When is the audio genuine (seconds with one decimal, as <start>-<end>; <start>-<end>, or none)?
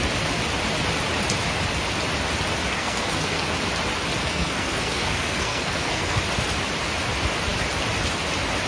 0.0-2.7; 3.5-4.2; 6.2-8.7